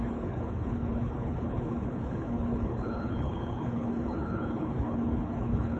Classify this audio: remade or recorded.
remade